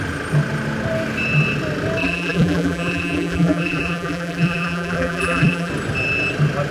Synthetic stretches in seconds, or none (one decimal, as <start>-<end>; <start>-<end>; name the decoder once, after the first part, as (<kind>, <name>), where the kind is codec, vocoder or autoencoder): 2.0-5.7 (vocoder, BigVGAN v2)